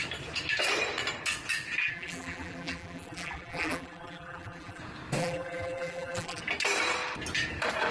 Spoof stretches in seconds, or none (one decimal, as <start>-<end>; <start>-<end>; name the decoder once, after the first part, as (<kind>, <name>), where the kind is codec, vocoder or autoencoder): 1.8-4.8 (vocoder, BigVGAN v2); 5.2-6.4